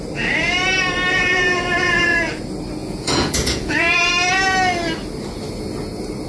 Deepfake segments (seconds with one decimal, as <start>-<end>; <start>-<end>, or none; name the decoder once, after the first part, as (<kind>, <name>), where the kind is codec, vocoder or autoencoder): 1.1-2.4 (vocoder, Vocos); 2.8-4.1